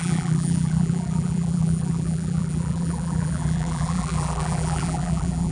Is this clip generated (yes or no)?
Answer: yes